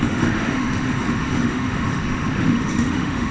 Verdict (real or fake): fake